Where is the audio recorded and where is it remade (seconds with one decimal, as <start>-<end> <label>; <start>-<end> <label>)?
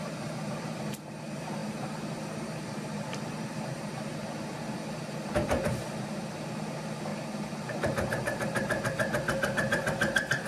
0.0-10.5 remade